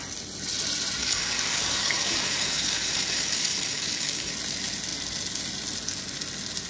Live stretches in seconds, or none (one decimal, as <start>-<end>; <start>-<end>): 0.0-1.0; 4.3-6.7